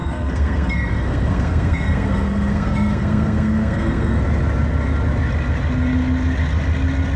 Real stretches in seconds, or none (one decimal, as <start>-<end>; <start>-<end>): 4.2-7.2